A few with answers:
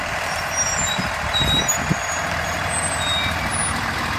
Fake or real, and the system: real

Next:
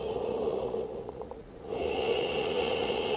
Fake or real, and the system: fake, vocoder, Vocos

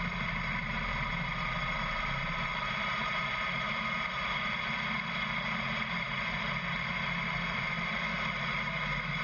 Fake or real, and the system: real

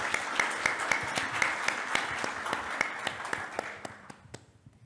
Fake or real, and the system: real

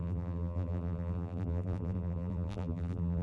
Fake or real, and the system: fake, vocoder, BigVGAN v2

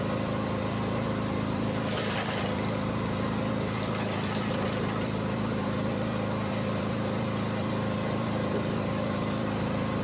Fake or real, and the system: fake, vocoder, BigVGAN v2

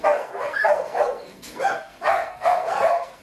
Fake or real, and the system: fake, codec, SNAC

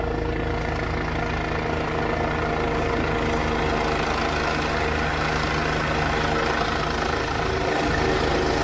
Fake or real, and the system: real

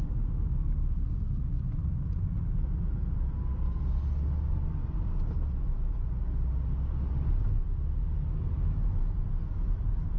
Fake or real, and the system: real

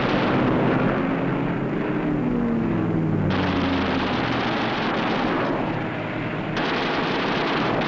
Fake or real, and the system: real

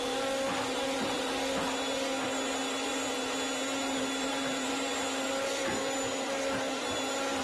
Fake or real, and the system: real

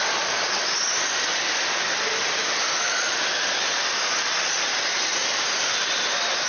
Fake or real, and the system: real